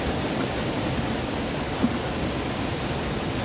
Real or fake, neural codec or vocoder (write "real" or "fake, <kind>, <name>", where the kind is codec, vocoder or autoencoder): real